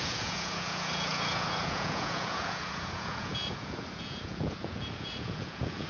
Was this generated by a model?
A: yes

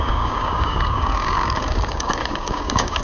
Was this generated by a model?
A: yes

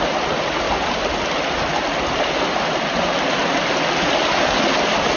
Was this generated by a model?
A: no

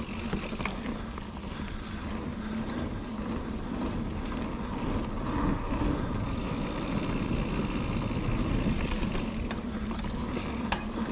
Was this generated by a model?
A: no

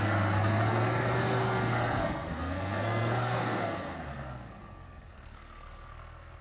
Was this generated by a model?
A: yes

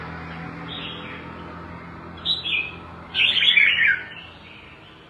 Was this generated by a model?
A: no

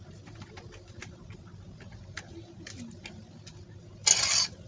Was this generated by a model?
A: no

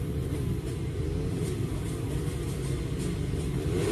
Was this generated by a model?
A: no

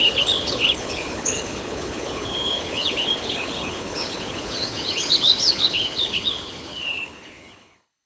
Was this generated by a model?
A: yes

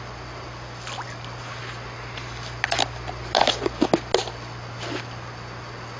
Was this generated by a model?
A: no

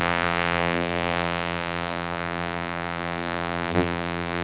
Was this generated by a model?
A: yes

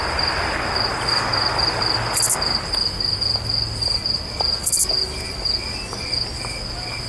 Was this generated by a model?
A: no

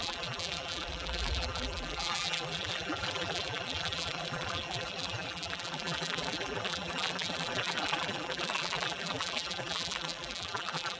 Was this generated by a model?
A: yes